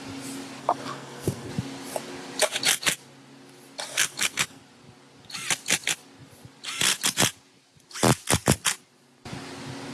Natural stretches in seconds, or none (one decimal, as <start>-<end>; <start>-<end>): 0.0-0.6; 1.5-3.9; 4.6-9.9